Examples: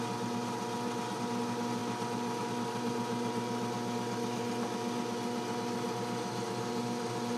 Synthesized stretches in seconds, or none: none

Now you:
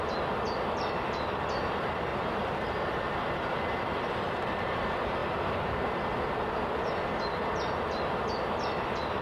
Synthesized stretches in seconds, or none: 2.1-4.8